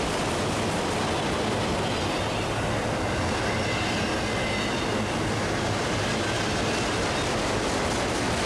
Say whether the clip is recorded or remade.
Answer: recorded